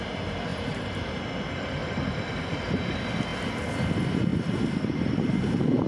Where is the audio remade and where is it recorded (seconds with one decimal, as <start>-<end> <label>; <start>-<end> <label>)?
0.0-0.5 recorded; 0.5-1.1 remade; 1.1-4.3 recorded; 4.3-5.9 remade